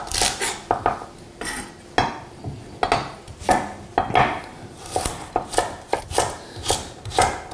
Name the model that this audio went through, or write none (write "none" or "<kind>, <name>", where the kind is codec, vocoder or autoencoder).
none